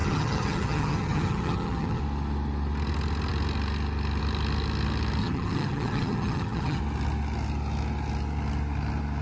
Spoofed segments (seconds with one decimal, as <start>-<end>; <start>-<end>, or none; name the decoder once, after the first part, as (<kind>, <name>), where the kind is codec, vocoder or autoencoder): 0.0-2.0 (vocoder, HiFi-GAN); 5.2-6.8